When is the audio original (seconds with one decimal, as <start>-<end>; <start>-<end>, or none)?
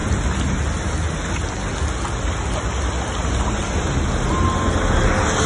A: 0.0-5.5